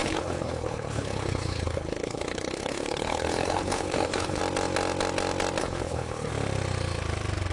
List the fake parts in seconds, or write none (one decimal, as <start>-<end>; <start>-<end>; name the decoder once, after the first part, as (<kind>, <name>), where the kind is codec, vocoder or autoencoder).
0.0-4.4 (codec, HILCodec); 5.6-6.3